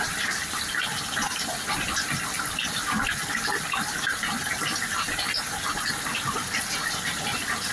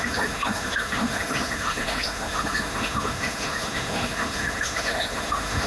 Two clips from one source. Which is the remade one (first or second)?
second